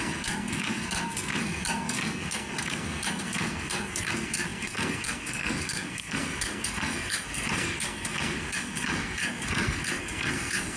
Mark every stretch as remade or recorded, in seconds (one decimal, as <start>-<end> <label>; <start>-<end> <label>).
0.0-10.8 remade